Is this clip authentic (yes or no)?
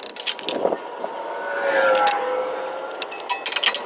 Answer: yes